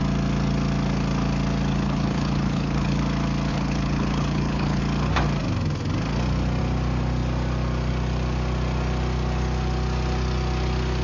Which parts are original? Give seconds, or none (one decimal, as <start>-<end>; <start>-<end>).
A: 0.0-1.7; 3.0-3.5; 4.8-11.0